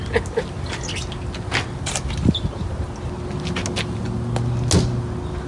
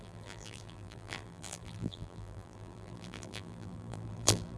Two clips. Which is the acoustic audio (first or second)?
first